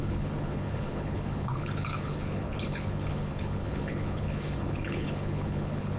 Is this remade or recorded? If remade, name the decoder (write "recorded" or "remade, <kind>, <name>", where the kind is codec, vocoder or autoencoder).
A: remade, codec, HILCodec